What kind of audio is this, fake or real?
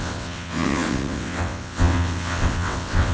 fake